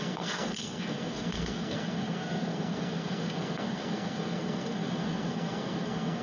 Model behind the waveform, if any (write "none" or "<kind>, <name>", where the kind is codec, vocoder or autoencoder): codec, SNAC